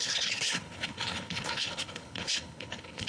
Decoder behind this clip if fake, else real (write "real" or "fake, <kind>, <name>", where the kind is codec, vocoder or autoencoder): fake, codec, HILCodec